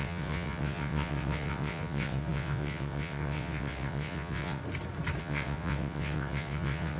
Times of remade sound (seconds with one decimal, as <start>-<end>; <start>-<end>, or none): 0.0-4.6; 5.2-7.0